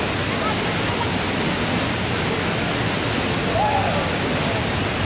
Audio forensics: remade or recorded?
recorded